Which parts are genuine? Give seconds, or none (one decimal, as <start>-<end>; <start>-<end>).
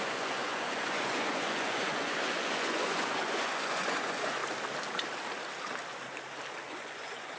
4.4-6.7